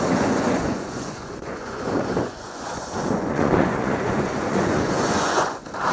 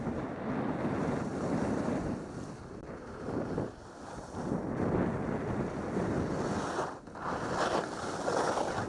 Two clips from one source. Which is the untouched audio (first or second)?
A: second